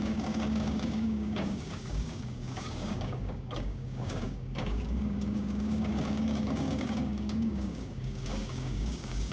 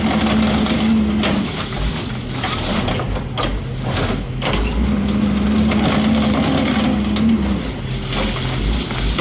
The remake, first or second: first